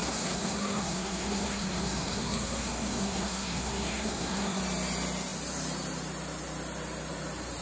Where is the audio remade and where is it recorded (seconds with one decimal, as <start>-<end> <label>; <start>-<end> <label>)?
0.0-4.6 remade; 4.6-7.6 recorded